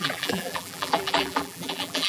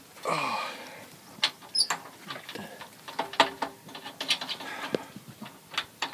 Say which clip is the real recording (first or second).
second